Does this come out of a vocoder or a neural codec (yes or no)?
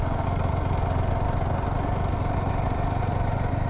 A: no